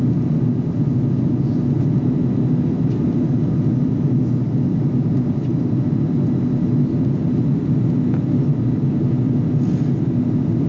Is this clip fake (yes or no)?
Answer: no